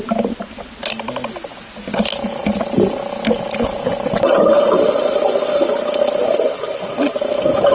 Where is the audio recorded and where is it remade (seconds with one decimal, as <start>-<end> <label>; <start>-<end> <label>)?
0.0-2.4 recorded; 2.4-3.0 remade; 3.0-3.9 recorded; 3.9-6.0 remade; 6.0-7.7 recorded